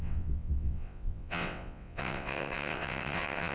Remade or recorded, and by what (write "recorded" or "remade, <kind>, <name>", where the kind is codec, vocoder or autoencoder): remade, vocoder, WaveNeXt